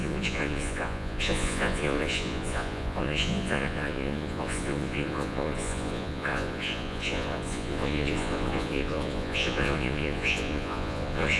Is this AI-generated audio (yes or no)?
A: yes